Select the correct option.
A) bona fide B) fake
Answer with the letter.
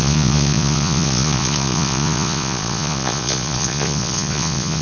B